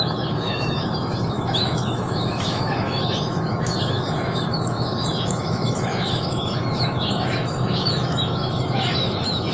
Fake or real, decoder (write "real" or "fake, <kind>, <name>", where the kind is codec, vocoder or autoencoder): fake, autoencoder, DAC-VAE